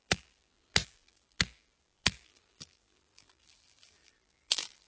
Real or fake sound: fake